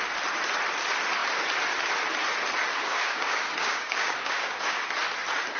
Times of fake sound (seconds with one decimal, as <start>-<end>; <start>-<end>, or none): 2.7-4.8